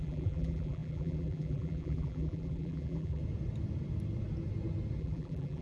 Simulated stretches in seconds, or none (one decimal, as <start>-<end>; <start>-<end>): 0.0-3.2; 5.0-5.6